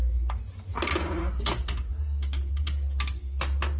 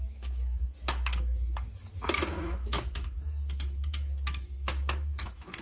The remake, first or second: second